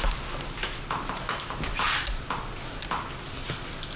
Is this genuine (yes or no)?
yes